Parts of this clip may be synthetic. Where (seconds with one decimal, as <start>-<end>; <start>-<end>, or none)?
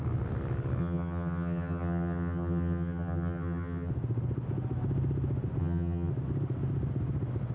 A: 0.8-3.9; 5.6-6.1